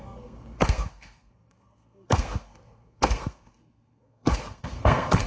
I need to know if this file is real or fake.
fake